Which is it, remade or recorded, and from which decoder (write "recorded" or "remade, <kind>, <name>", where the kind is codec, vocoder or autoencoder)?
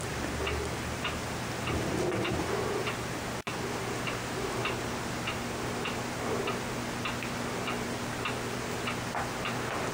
recorded